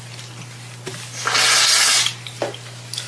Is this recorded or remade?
recorded